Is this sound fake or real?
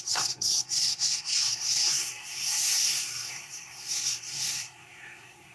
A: fake